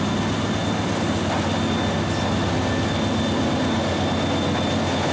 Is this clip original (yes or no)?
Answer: yes